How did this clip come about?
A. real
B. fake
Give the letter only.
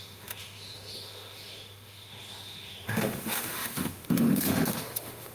B